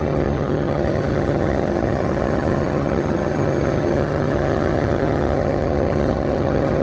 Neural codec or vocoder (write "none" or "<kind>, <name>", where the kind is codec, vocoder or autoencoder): vocoder, HiFi-GAN